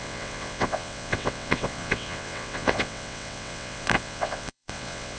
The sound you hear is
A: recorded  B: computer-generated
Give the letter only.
B